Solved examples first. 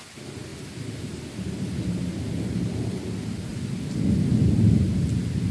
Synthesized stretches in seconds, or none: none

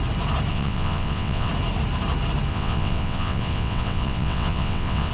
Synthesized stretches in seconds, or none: 0.5-1.5; 2.5-5.1

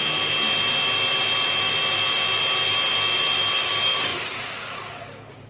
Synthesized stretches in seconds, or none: none

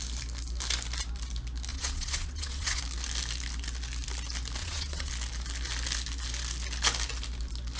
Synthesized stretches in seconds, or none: 1.7-2.8; 4.6-5.1